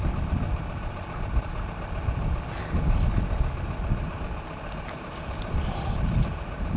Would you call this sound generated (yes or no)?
no